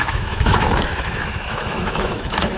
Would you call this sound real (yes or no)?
no